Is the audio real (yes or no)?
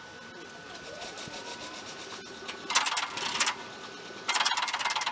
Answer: yes